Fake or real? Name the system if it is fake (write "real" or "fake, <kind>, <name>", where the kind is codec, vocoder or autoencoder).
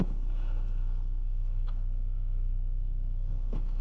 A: fake, codec, SNAC